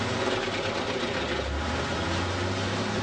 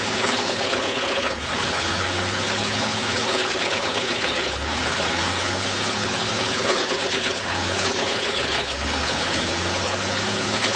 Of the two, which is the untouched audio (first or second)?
first